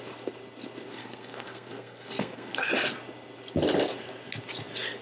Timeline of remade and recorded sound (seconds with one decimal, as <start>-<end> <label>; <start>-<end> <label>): 0.0-1.0 recorded; 1.0-2.7 remade; 2.7-5.0 recorded